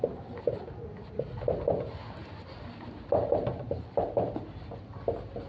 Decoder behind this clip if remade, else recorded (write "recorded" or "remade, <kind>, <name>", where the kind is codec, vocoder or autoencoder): recorded